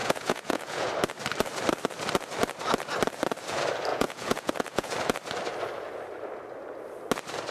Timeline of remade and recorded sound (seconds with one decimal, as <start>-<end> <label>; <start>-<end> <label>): 0.0-0.9 remade; 0.9-3.9 recorded; 3.9-4.9 remade; 4.9-7.5 recorded